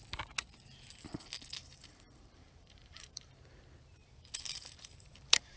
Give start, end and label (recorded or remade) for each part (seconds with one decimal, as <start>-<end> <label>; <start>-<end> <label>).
0.0-1.6 recorded; 1.6-3.3 remade; 3.3-4.0 recorded; 4.0-5.6 remade